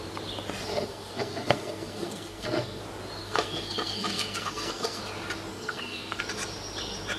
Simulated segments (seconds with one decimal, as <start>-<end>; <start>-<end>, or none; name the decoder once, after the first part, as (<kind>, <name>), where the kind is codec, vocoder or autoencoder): 0.7-2.8 (codec, SNAC); 3.2-5.0; 5.5-6.2